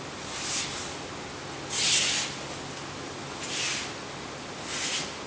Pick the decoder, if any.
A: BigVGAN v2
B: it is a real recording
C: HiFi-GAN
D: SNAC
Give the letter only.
B